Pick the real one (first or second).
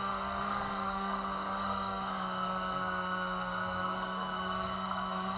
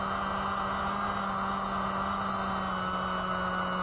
second